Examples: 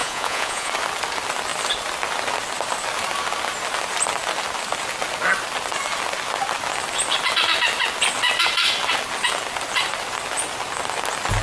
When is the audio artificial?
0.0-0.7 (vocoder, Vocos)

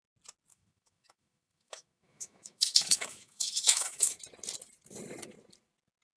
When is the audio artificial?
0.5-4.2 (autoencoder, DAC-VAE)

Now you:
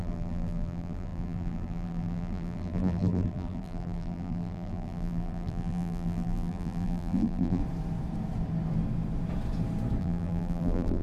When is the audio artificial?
0.0-7.6 (vocoder, BigVGAN v2); 10.0-11.0

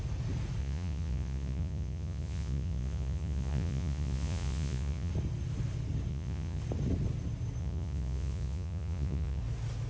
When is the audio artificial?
0.6-5.1 (vocoder, Vocos); 6.1-6.6; 7.6-9.4

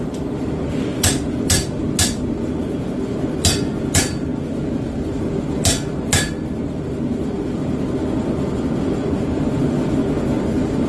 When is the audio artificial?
none